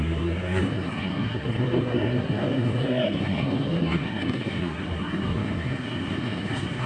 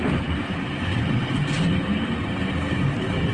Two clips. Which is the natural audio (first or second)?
second